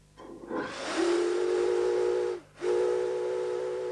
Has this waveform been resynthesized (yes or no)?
no